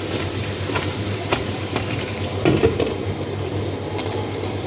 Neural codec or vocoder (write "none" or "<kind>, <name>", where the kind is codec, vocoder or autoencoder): vocoder, BigVGAN v2